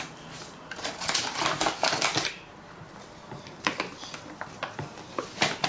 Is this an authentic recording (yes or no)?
no